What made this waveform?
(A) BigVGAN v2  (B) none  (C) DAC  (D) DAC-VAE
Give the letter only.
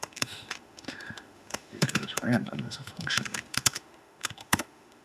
D